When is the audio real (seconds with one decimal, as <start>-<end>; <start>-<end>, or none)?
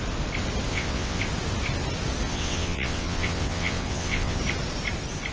0.0-0.7; 1.2-2.3; 4.4-5.3